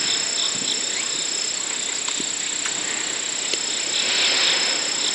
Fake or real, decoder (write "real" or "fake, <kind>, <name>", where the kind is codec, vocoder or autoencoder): real